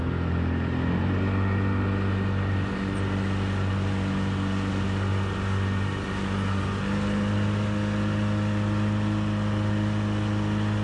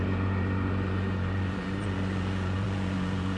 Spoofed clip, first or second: second